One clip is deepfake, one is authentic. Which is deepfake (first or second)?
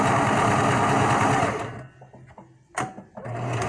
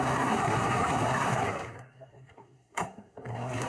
second